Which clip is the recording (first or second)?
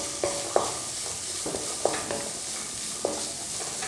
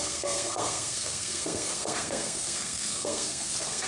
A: first